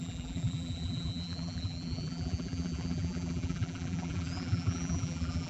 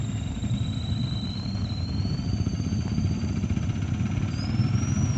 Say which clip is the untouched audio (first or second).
second